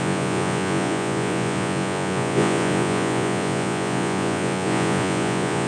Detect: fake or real fake